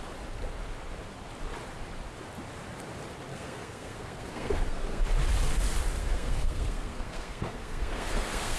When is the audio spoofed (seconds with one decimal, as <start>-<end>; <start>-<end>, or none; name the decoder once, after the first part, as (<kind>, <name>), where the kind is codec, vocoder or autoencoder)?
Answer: 3.3-5.0 (codec, SNAC); 6.0-8.6